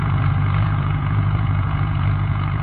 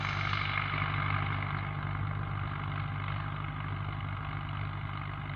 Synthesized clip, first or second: first